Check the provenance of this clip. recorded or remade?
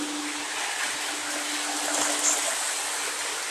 recorded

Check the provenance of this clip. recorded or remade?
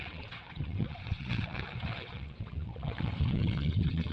remade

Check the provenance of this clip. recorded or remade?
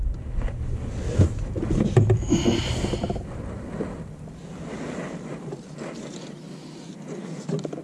recorded